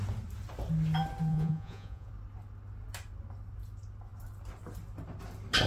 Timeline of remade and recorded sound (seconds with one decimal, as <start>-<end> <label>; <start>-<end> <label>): 0.0-1.3 recorded; 1.3-2.1 remade; 2.1-5.7 recorded